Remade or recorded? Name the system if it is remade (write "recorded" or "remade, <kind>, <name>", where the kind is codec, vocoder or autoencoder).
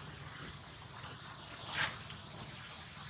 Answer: recorded